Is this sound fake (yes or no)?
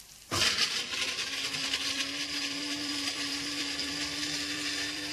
yes